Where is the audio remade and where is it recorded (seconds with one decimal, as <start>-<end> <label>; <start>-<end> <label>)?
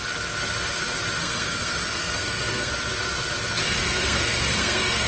0.0-1.2 recorded; 1.2-2.7 remade; 2.7-3.8 recorded; 3.8-5.1 remade